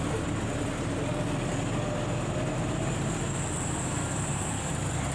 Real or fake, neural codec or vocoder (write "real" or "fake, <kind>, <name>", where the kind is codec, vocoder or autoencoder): real